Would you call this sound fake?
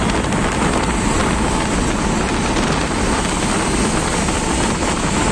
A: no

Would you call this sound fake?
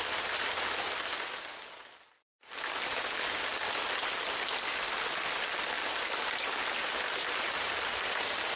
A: no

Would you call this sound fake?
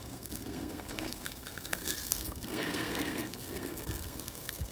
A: yes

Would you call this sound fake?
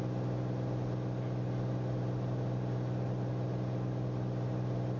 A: no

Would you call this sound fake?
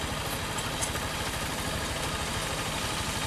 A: no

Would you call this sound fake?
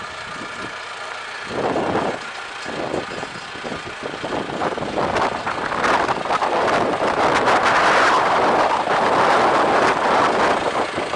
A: no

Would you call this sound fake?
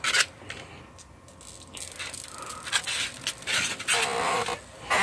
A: no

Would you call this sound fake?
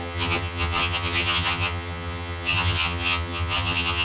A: yes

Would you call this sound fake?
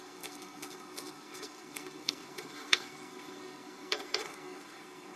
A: yes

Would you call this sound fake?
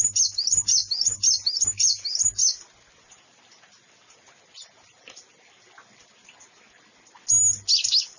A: no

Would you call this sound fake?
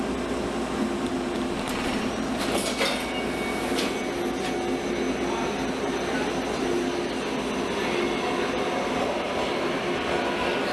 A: no